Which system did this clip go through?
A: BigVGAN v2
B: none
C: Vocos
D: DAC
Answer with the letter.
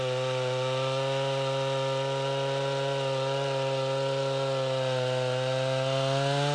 B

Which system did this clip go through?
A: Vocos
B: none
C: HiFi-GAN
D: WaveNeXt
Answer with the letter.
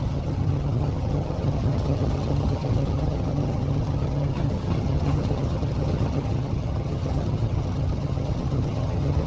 C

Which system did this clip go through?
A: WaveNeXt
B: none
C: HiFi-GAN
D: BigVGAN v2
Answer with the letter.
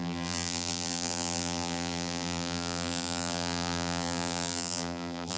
D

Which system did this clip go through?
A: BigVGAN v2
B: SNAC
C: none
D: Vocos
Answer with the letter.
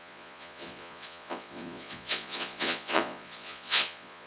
D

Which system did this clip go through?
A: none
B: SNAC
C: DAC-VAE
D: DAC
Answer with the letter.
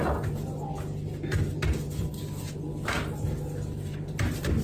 A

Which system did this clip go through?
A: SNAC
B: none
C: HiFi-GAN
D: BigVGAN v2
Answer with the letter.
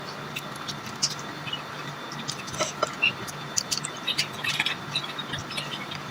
B